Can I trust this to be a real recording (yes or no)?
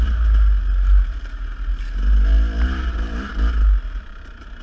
yes